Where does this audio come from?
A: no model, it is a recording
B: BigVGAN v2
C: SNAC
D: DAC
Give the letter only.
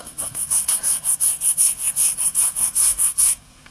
C